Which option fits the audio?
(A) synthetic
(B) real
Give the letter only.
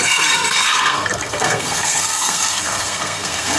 A